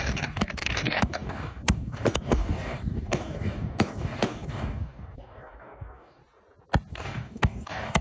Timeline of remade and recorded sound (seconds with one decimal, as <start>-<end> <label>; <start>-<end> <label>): 0.0-6.2 remade; 6.2-6.9 recorded; 6.9-8.0 remade